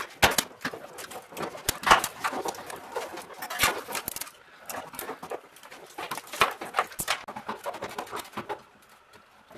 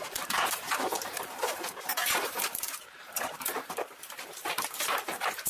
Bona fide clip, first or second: first